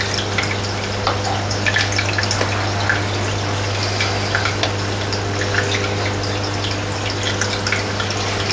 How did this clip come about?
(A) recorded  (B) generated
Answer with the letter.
A